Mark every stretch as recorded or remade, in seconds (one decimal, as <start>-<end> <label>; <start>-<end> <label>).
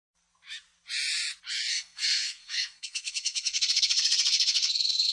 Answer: 0.0-1.7 recorded; 1.7-5.1 remade